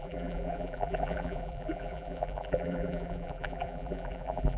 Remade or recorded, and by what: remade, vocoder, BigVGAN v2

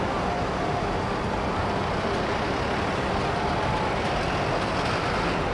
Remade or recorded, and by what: recorded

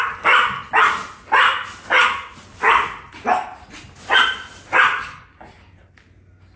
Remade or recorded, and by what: recorded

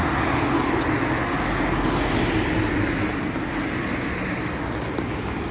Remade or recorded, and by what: recorded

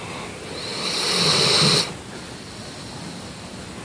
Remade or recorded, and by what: recorded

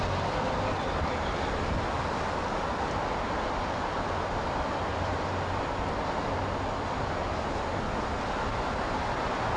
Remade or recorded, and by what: recorded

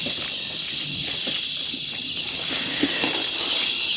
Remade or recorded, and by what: recorded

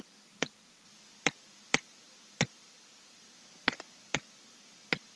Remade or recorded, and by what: recorded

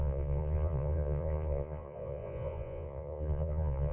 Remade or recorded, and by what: remade, vocoder, Vocos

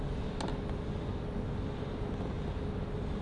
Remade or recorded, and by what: recorded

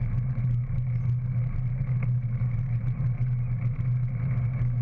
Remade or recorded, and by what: recorded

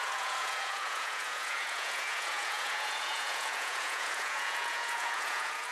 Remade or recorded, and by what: remade, vocoder, Vocos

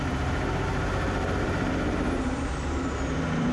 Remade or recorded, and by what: remade, vocoder, BigVGAN v2